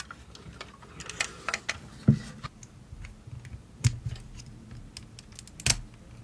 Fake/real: real